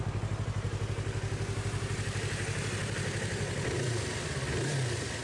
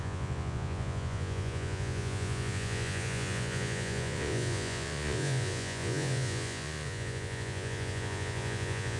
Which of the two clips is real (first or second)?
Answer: first